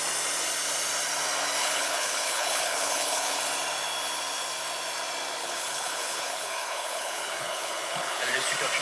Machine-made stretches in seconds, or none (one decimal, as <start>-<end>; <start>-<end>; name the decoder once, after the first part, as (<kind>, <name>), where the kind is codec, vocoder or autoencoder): 1.6-3.4 (codec, HILCodec); 5.4-8.2